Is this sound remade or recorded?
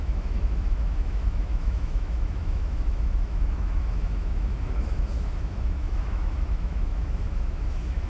remade